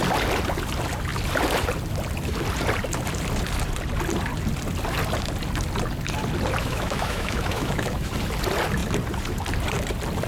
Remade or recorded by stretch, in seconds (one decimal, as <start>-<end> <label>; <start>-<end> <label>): 0.0-6.6 recorded; 6.6-8.1 remade; 8.1-10.3 recorded